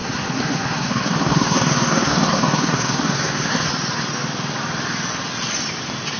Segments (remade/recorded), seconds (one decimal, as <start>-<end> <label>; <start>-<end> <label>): 0.0-3.7 remade; 3.7-6.2 recorded